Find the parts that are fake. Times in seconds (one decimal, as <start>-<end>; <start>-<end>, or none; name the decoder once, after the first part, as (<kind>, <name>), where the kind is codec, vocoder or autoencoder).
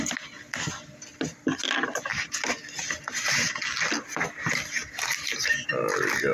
none